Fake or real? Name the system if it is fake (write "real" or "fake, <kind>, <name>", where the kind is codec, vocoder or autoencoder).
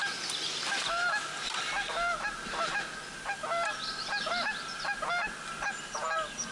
real